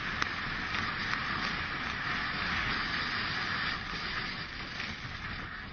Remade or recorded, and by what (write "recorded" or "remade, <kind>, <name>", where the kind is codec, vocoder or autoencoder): recorded